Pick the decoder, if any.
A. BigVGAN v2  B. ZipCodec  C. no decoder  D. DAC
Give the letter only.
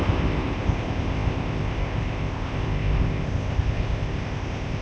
B